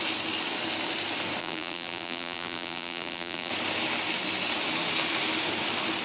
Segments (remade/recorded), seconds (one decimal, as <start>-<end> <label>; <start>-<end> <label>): 0.0-1.4 recorded; 1.4-3.5 remade; 3.5-6.0 recorded